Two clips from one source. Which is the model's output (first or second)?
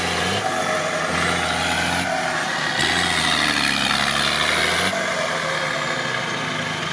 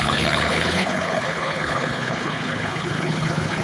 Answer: second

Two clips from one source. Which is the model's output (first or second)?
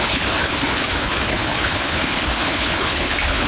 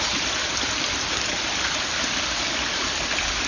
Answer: first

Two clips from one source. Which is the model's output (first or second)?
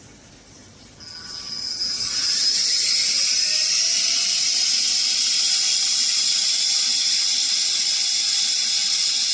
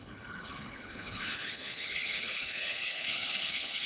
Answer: second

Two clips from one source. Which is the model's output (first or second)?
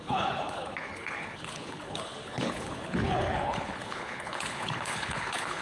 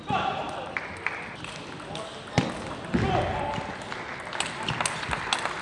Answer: first